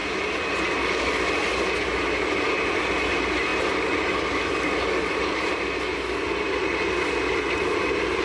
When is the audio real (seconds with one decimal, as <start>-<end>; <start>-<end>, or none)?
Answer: 0.0-8.2